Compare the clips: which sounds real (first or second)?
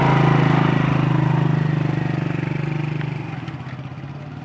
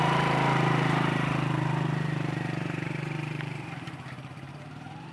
first